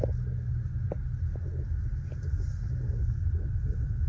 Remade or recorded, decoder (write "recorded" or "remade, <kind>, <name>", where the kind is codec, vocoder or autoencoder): recorded